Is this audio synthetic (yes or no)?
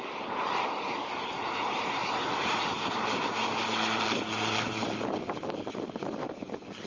yes